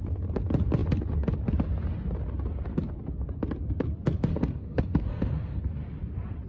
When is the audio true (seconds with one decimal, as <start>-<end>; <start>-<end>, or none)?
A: 0.0-4.3; 5.6-6.5